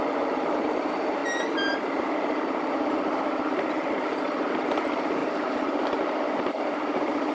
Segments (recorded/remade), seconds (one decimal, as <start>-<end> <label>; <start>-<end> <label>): 0.0-1.2 remade; 1.2-1.8 recorded; 1.8-7.3 remade

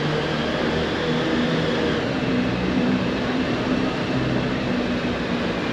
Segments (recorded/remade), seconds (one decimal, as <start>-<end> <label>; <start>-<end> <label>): 0.0-2.2 recorded; 2.2-4.7 remade; 4.7-5.7 recorded